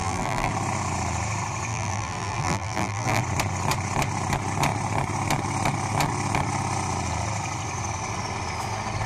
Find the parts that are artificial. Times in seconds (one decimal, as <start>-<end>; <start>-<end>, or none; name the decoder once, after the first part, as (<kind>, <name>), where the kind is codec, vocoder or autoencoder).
0.0-0.5 (vocoder, BigVGAN v2); 1.7-3.2